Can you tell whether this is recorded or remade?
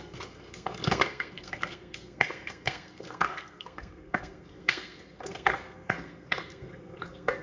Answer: remade